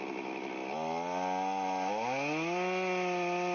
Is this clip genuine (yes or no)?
yes